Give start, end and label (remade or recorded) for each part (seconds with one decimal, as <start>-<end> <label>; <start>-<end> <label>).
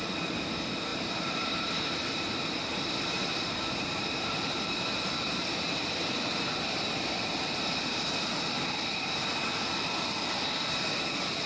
0.0-0.9 recorded; 0.9-5.9 remade; 5.9-11.5 recorded